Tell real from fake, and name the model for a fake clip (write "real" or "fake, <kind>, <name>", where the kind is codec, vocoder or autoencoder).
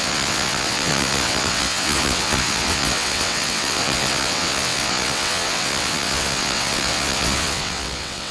fake, vocoder, WaveNeXt